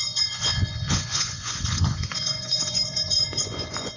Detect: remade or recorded remade